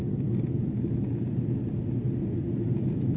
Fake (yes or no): no